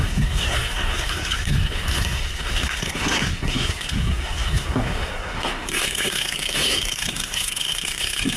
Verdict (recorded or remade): remade